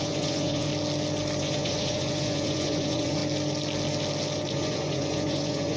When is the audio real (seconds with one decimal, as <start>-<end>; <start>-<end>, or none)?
0.7-1.4; 3.2-4.5